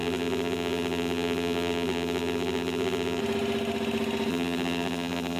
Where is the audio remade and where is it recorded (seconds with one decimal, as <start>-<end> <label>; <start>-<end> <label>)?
0.0-3.2 remade; 3.2-4.3 recorded; 4.3-5.4 remade